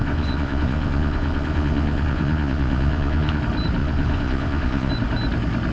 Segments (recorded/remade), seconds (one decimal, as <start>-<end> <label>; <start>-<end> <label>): 0.0-3.4 remade; 3.4-3.8 recorded; 3.8-4.9 remade; 4.9-5.7 recorded